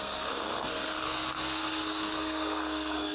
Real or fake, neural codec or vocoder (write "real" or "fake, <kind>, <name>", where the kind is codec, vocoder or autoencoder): fake, codec, SNAC